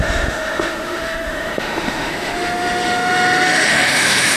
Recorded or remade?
remade